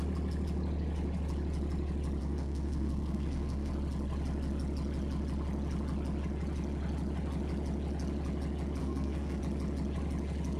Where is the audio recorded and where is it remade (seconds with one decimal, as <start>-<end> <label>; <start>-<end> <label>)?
0.0-2.2 recorded; 2.2-3.7 remade; 3.7-8.8 recorded; 8.8-9.4 remade; 9.4-10.6 recorded